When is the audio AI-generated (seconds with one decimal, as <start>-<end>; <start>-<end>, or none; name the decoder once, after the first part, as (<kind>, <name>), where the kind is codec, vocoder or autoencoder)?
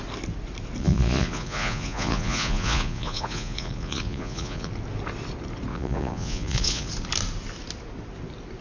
0.8-4.7 (vocoder, Vocos); 5.7-6.9